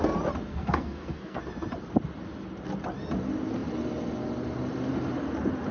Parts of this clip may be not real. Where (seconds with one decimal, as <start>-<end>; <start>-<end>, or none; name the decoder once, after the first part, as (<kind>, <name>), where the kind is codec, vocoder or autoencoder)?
0.5-1.4 (codec, SNAC)